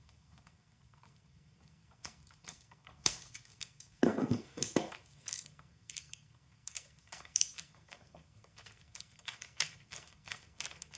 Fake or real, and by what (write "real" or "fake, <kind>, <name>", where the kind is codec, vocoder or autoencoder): fake, codec, SNAC